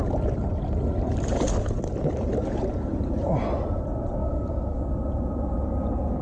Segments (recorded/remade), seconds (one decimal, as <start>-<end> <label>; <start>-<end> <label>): 0.0-4.2 recorded; 4.2-4.8 remade; 4.8-6.2 recorded